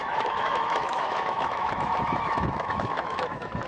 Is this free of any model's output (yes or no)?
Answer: no